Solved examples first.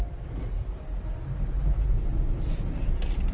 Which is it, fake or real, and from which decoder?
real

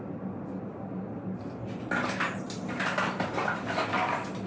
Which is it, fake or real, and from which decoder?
real